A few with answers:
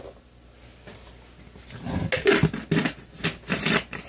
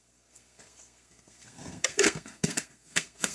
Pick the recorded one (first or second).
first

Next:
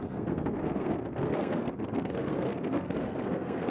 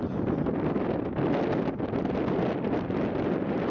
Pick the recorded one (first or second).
second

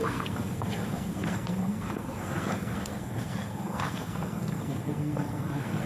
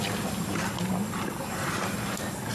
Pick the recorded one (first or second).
second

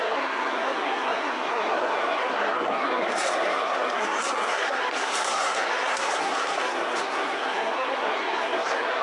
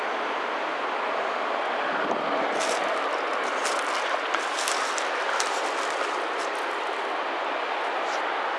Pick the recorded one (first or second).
second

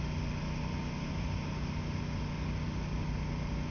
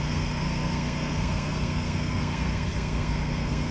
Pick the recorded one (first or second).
first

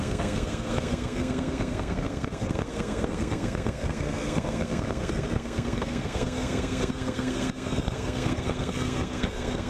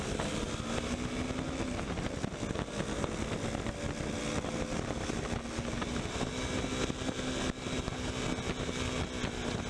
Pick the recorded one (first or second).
second